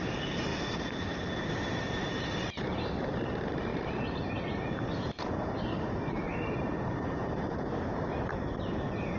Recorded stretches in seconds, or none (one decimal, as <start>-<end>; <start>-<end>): 0.5-2.6